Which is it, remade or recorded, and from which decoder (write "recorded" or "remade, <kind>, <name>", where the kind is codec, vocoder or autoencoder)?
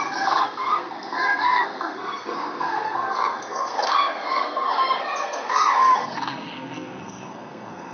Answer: remade, codec, SNAC